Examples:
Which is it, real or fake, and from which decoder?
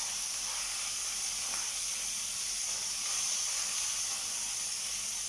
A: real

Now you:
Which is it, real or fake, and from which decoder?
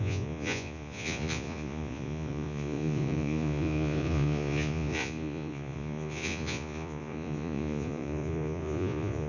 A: fake, vocoder, Vocos